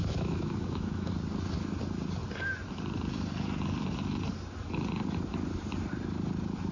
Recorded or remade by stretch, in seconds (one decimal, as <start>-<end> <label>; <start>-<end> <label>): 0.0-1.1 remade; 1.1-6.7 recorded